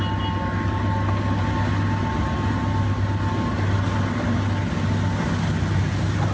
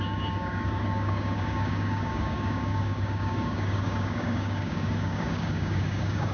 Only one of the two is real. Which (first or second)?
first